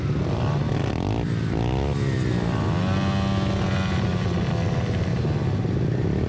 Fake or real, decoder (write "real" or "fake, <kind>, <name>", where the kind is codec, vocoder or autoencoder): real